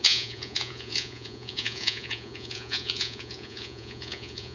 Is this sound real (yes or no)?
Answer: no